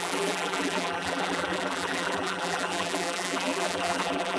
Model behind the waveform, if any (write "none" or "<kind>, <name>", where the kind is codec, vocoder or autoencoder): vocoder, BigVGAN v2